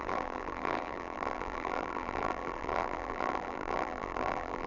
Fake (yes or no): yes